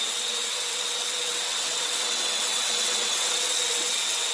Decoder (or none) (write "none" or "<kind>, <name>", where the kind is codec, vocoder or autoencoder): vocoder, WaveNeXt